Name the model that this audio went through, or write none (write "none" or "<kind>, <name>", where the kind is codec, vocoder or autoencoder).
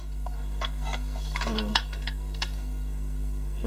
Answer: codec, SNAC